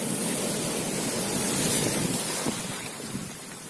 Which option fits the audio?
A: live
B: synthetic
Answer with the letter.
A